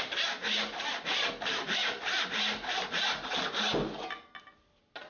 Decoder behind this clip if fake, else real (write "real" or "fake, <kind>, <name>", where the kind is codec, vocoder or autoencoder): real